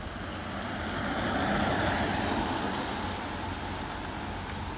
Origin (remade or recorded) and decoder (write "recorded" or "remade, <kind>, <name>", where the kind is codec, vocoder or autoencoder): recorded